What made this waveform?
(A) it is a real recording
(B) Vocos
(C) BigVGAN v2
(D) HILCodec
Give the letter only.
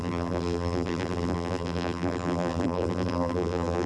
C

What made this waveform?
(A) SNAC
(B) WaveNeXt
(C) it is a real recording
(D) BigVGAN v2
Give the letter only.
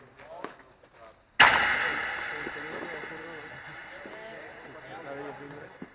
C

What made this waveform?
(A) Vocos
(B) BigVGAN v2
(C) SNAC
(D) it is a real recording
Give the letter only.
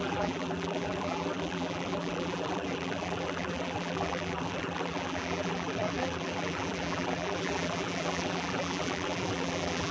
B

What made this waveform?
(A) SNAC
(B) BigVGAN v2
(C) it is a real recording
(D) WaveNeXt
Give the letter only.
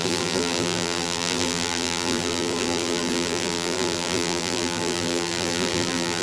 B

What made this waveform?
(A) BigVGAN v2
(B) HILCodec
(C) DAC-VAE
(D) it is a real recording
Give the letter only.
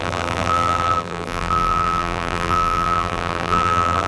A